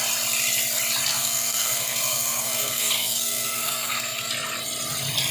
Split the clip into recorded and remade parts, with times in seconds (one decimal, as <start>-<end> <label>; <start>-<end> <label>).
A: 0.0-1.1 recorded; 1.1-4.3 remade; 4.3-5.3 recorded